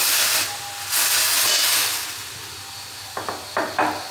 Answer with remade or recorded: recorded